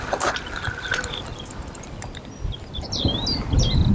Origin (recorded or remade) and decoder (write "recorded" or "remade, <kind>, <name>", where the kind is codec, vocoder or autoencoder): recorded